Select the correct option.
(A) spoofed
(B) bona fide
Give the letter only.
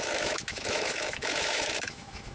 A